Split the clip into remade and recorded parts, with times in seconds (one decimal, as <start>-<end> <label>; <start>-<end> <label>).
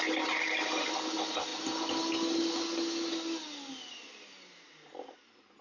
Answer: 0.0-5.6 recorded